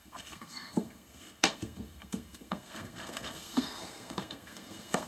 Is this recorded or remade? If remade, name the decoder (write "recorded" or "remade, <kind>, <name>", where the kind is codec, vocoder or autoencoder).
remade, codec, SNAC